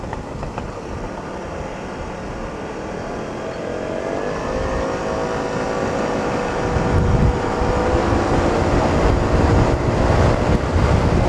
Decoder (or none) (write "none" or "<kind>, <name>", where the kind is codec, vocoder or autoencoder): none